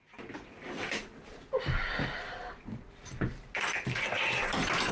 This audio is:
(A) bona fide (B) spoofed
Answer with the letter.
A